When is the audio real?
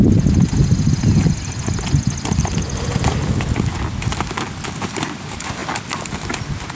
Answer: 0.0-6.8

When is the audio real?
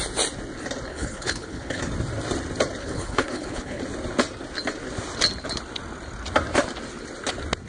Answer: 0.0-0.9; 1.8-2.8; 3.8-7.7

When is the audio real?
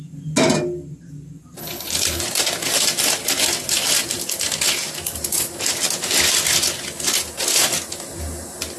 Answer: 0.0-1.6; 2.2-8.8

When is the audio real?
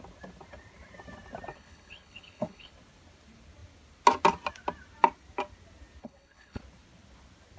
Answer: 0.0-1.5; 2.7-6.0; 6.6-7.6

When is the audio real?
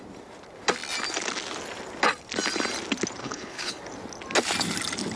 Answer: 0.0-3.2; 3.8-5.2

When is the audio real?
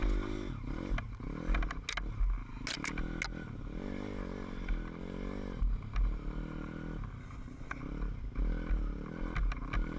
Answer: 0.0-7.2; 7.8-10.0